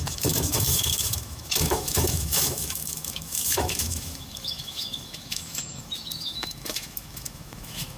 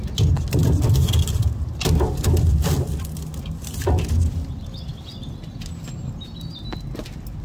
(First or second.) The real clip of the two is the second